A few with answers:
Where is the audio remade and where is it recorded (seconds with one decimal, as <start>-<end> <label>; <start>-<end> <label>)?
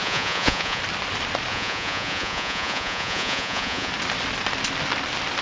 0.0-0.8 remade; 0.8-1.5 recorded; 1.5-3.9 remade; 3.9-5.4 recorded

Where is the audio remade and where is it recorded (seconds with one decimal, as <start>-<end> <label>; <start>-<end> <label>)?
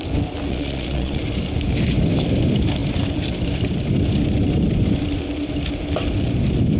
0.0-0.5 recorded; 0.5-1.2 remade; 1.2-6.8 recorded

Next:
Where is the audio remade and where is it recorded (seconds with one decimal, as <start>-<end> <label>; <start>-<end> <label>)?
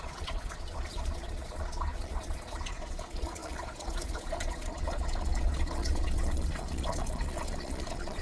0.0-8.2 remade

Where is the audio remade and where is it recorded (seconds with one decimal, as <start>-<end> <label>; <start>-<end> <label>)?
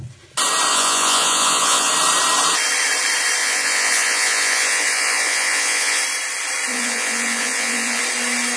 0.0-0.7 recorded; 0.7-1.9 remade; 1.9-3.4 recorded; 3.4-6.0 remade; 6.0-6.7 recorded; 6.7-8.0 remade; 8.0-8.6 recorded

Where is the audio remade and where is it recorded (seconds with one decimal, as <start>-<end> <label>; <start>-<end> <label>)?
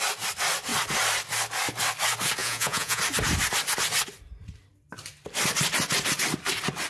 0.0-2.4 recorded; 2.4-3.0 remade; 3.0-6.9 recorded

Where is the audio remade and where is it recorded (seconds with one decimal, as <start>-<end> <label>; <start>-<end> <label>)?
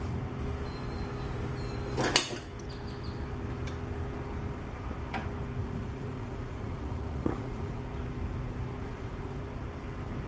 0.0-5.6 recorded; 5.6-7.8 remade; 7.8-8.8 recorded; 8.8-9.4 remade; 9.4-10.3 recorded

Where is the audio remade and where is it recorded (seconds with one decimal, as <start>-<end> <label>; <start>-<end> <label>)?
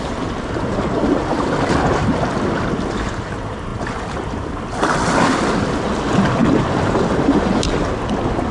0.0-8.5 recorded